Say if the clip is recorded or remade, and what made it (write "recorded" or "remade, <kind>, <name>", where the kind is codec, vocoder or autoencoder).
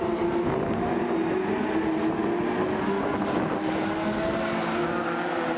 recorded